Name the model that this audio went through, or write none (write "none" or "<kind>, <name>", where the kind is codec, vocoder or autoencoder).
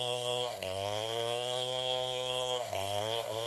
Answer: codec, SNAC